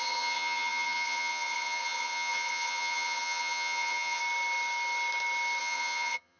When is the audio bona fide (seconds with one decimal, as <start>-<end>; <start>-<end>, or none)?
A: 4.2-5.6